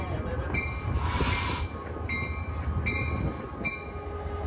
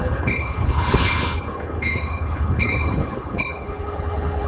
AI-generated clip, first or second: second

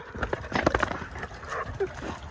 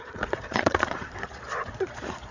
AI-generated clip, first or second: second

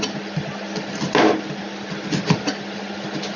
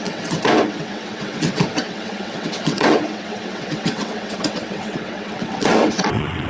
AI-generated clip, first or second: second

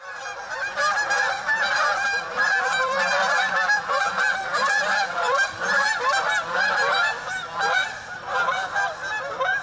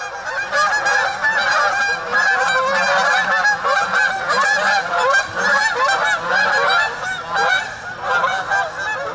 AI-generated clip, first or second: first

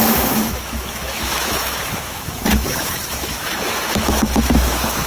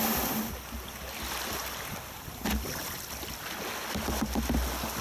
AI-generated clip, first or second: first